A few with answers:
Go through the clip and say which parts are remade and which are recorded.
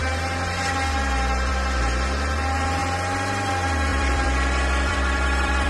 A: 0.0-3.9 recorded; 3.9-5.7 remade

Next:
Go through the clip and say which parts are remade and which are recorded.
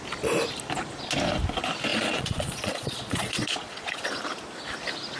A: 0.0-1.9 recorded; 1.9-4.2 remade; 4.2-5.2 recorded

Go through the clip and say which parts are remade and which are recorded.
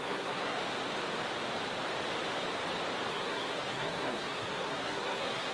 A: 0.0-0.6 remade; 0.6-3.1 recorded; 3.1-5.5 remade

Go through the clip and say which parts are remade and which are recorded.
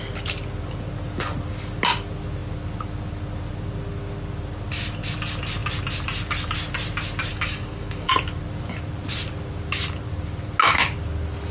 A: 0.0-7.3 recorded; 7.3-8.1 remade; 8.1-11.5 recorded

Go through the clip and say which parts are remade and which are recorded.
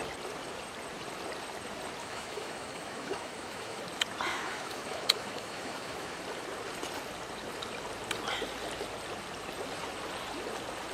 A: 0.0-2.0 recorded; 2.0-3.8 remade; 3.8-4.3 recorded; 4.3-6.2 remade; 6.2-10.9 recorded